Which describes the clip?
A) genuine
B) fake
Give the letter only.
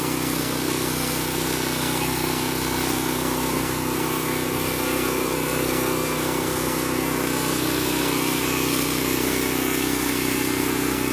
B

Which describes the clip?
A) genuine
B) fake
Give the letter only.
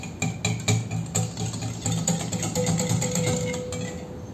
A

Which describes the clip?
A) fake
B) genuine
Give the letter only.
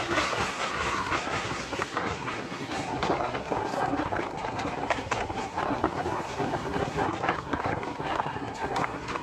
A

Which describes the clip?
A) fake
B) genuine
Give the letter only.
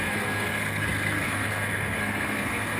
A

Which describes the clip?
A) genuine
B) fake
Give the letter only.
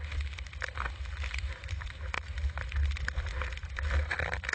A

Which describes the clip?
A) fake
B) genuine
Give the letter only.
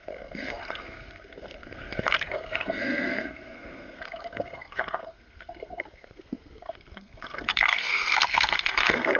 A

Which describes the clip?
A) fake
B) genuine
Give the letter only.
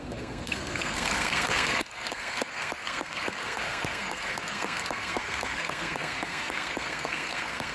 A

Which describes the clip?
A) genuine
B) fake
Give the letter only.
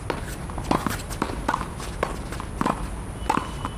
A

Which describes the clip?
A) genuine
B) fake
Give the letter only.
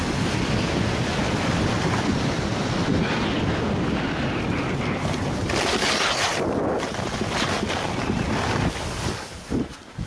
A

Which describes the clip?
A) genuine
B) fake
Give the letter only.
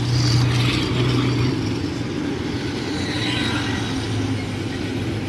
A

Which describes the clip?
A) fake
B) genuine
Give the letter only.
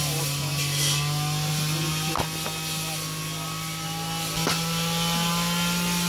B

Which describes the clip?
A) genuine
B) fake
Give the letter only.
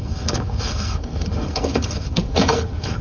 B